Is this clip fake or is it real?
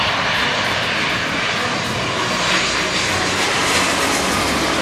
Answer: real